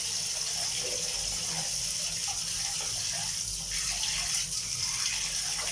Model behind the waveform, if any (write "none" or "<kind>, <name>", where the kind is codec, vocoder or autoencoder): none